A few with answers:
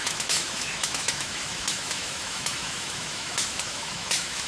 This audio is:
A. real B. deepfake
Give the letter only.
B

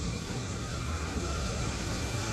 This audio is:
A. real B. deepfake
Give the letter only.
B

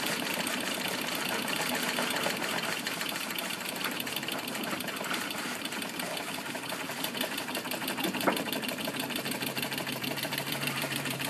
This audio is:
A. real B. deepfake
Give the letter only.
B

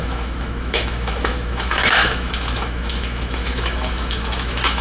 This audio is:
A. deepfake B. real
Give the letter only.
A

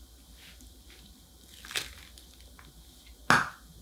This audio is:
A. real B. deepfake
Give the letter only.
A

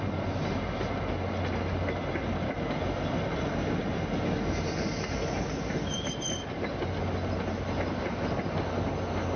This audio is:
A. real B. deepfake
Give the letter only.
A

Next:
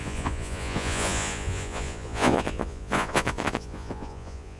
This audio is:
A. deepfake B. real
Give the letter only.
A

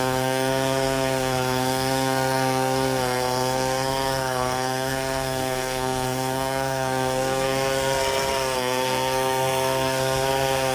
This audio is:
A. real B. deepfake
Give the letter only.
B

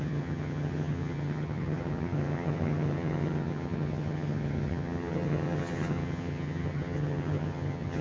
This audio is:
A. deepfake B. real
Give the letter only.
A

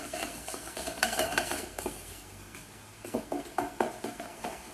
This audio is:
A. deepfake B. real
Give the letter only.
A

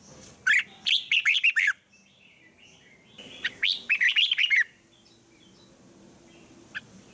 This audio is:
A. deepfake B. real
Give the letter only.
B